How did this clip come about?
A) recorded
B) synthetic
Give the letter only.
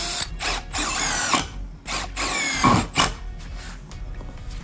B